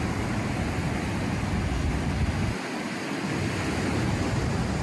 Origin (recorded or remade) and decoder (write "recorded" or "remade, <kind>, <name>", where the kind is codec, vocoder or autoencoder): recorded